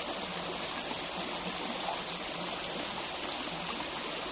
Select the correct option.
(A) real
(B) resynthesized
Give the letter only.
A